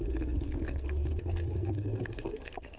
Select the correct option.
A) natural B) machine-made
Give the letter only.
B